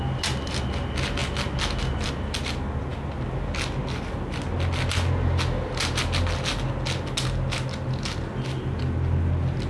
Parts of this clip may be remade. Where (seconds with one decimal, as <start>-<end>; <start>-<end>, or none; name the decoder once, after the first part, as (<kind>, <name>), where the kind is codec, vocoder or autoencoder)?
none